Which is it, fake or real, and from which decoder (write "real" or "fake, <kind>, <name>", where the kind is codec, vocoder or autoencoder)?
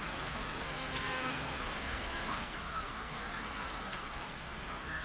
fake, codec, SNAC